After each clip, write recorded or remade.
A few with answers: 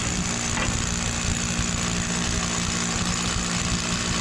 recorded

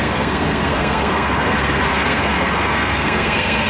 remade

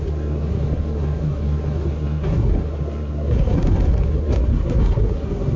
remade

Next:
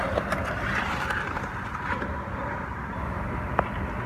recorded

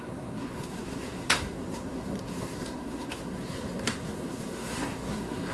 remade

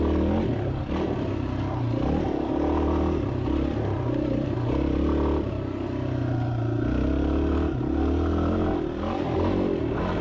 recorded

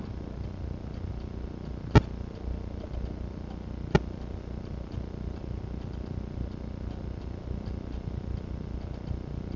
recorded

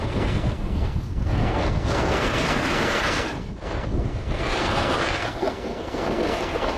remade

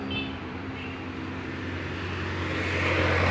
recorded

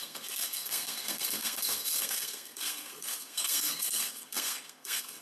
remade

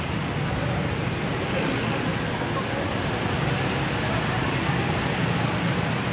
recorded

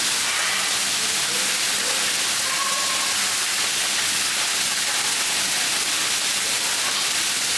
recorded